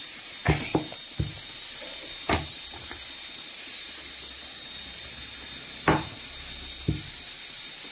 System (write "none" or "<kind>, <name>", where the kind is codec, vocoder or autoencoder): none